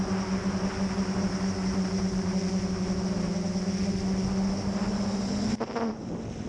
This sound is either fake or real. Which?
real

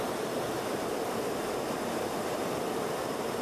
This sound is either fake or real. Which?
fake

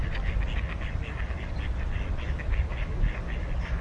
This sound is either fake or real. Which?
real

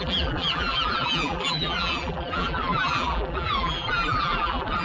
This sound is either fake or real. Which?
fake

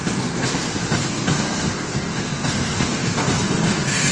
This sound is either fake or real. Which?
fake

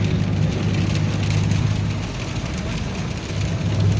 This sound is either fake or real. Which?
real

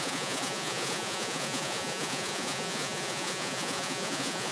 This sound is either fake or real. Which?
fake